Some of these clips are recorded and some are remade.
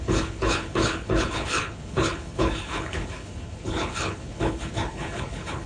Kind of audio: remade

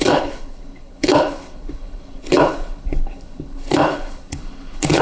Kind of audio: remade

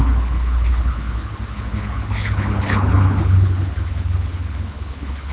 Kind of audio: remade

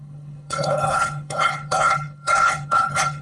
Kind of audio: remade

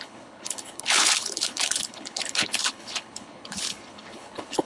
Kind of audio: remade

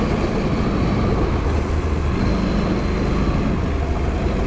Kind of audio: recorded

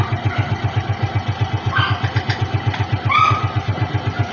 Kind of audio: recorded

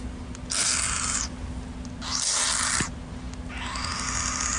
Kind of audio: recorded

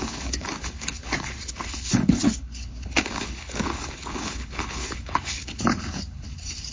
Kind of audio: remade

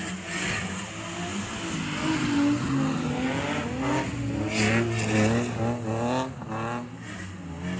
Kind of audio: recorded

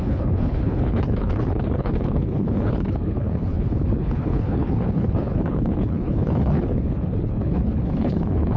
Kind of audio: remade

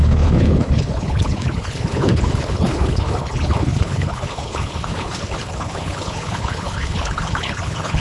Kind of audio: remade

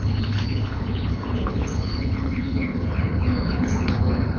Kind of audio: remade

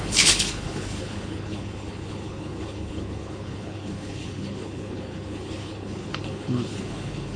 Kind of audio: remade